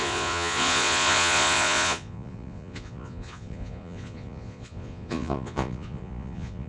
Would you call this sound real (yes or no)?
no